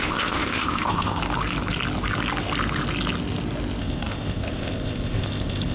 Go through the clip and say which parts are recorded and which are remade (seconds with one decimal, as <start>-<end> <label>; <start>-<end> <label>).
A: 0.0-1.2 remade; 1.2-3.8 recorded; 3.8-5.7 remade